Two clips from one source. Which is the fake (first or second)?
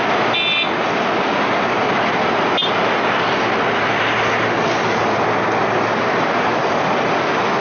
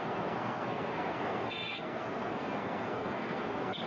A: second